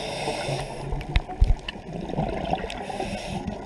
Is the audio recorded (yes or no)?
yes